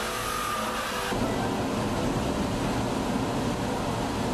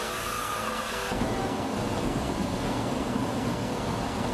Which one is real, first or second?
first